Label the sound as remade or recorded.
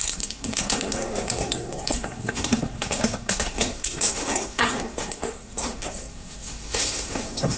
remade